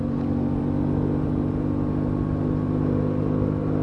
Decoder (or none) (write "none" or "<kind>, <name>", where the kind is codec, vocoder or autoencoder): none